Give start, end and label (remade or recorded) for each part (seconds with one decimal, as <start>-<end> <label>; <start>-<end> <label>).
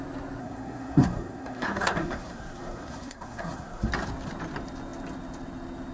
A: 0.0-0.4 recorded; 0.4-3.9 remade; 3.9-5.9 recorded